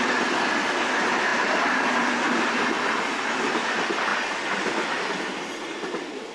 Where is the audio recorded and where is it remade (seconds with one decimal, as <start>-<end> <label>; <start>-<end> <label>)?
0.0-6.3 recorded